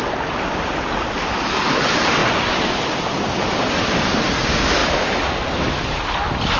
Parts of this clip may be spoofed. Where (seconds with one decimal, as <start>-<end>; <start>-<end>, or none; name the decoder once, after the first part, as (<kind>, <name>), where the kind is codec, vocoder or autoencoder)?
none